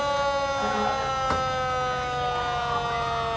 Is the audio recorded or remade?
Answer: recorded